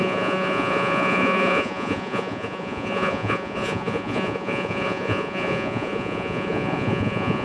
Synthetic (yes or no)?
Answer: yes